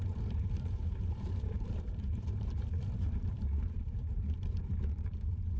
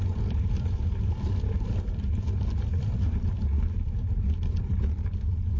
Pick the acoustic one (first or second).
second